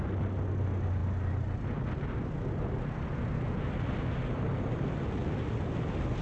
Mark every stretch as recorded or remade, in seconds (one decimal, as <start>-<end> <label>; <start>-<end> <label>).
0.0-6.2 recorded